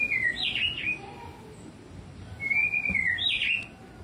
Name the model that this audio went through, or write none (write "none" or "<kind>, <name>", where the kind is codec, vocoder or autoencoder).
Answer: none